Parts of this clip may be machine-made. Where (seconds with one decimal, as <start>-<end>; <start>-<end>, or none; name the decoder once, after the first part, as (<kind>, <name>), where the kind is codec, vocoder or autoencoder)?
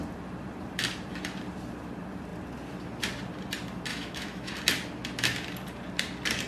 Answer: 3.9-4.5 (autoencoder, DAC-VAE)